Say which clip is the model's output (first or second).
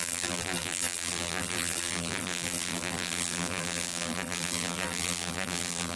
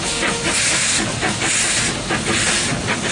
first